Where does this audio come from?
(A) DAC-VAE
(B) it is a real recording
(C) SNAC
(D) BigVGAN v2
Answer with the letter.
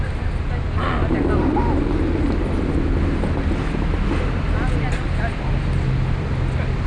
B